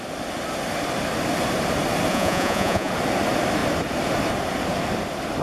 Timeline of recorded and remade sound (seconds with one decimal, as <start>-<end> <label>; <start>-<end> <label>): 0.0-2.1 recorded; 2.1-2.9 remade; 2.9-5.4 recorded